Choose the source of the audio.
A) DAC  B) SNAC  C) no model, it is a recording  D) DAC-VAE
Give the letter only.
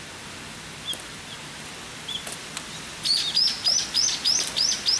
C